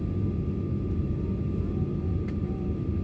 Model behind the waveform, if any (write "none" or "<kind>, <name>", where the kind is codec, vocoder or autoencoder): none